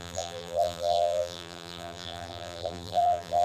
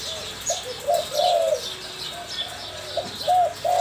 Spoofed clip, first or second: first